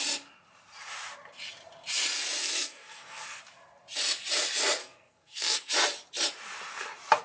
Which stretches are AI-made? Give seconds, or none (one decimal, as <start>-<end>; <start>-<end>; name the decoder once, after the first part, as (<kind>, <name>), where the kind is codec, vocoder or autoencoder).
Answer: 2.4-3.4 (codec, SNAC); 4.8-5.7